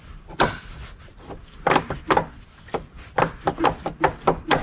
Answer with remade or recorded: recorded